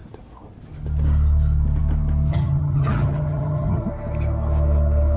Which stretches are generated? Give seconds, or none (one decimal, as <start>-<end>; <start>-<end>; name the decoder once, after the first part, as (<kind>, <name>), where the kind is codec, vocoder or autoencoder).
2.3-3.8 (vocoder, HiFi-GAN)